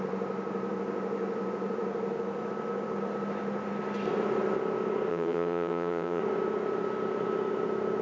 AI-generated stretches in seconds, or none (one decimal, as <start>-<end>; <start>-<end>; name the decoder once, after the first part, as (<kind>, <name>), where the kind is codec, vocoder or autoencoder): 5.1-6.2 (vocoder, HiFi-GAN)